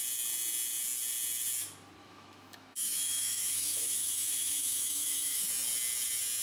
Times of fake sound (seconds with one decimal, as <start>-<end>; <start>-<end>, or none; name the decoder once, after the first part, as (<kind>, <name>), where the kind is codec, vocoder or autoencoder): 2.0-5.5 (autoencoder, DAC-VAE)